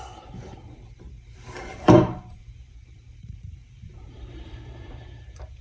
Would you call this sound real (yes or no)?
no